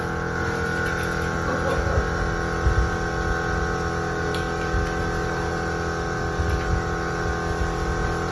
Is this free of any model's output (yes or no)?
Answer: yes